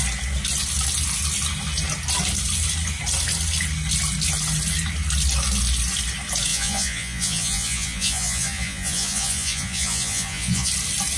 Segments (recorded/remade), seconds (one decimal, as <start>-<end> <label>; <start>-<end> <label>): 0.0-6.5 recorded; 6.5-10.7 remade; 10.7-11.2 recorded